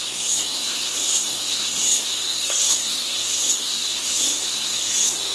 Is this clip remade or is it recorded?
remade